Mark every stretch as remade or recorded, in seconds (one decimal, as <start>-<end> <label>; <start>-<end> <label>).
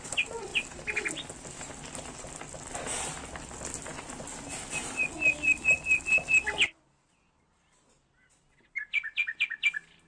0.0-10.1 recorded